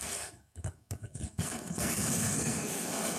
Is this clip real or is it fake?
fake